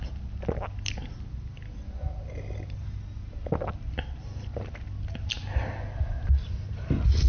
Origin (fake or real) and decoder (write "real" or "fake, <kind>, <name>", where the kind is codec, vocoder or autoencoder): real